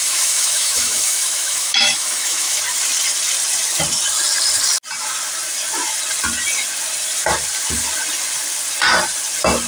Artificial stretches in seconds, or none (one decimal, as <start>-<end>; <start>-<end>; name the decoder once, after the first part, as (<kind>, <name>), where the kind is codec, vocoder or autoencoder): 0.0-2.6 (autoencoder, DAC-VAE)